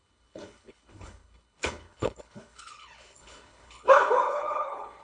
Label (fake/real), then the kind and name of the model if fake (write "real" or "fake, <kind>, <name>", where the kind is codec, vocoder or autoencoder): fake, codec, HILCodec